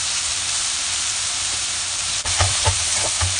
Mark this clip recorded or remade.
remade